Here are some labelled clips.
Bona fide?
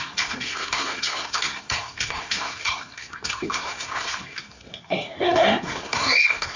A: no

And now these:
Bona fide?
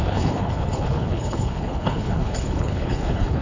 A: no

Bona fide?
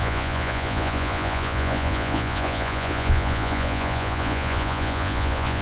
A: no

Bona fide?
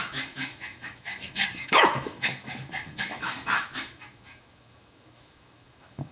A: no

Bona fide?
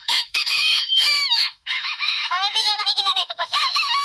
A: no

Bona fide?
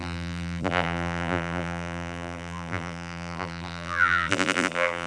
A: no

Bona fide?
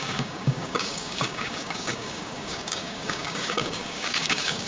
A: no